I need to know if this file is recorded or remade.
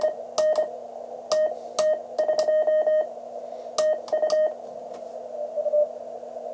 recorded